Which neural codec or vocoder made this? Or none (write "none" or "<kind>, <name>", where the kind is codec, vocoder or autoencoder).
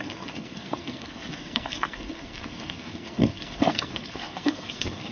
codec, SNAC